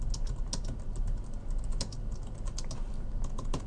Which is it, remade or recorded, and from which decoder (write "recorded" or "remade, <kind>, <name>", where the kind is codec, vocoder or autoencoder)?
recorded